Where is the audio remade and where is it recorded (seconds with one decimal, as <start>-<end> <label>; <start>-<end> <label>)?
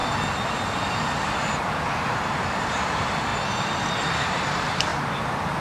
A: 0.0-0.9 recorded; 0.9-3.3 remade; 3.3-4.0 recorded; 4.0-4.9 remade; 4.9-5.6 recorded